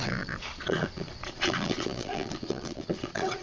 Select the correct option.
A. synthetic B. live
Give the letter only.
A